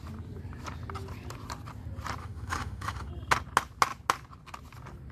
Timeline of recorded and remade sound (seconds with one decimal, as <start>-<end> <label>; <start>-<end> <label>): 0.0-2.2 recorded; 2.2-3.1 remade; 3.1-5.1 recorded